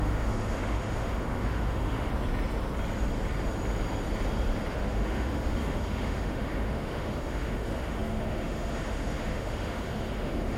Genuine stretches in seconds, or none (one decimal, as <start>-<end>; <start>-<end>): 2.1-4.7